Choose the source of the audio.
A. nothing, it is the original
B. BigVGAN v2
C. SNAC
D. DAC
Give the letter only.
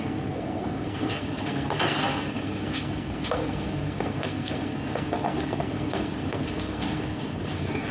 C